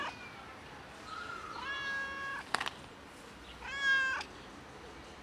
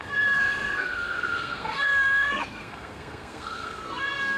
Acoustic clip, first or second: first